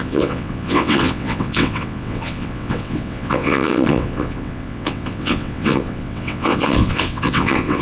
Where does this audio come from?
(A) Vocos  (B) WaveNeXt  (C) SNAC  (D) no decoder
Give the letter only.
B